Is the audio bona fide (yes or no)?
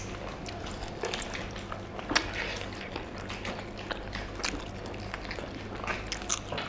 yes